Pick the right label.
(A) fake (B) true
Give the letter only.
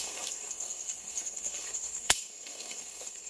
A